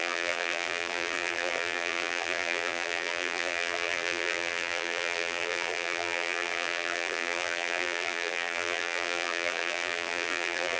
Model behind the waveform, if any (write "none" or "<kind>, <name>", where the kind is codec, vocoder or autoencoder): vocoder, BigVGAN v2